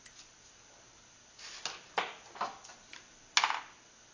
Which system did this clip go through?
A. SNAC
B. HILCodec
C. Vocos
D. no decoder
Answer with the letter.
D